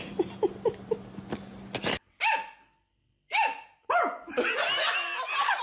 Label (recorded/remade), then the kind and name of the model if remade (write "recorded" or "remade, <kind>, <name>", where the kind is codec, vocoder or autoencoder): recorded